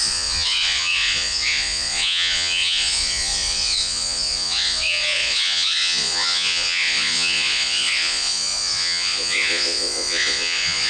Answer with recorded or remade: remade